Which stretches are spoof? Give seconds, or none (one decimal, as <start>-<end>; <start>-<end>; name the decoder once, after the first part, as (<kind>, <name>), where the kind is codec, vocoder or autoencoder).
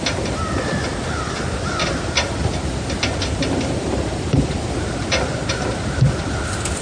none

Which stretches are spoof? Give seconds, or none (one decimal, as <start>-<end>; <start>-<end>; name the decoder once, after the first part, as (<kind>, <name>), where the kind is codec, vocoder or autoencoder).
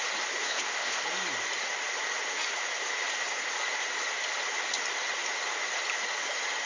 0.4-1.0 (codec, ZipCodec)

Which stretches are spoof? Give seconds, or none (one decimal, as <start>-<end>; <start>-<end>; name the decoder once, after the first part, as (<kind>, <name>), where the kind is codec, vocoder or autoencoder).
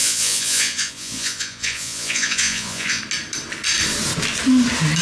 0.0-3.0 (vocoder, Vocos)